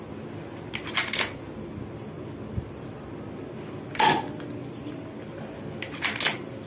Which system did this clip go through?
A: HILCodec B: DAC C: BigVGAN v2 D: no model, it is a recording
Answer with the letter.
D